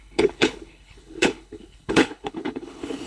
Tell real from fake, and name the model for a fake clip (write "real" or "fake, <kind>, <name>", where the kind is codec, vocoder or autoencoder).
fake, codec, HILCodec